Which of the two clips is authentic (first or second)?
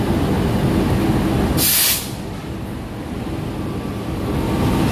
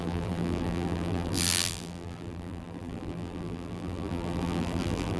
first